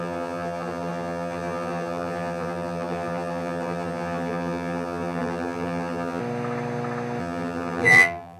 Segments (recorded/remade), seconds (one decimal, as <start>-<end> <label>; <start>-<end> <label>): 0.0-6.2 remade; 6.2-7.2 recorded; 7.2-8.4 remade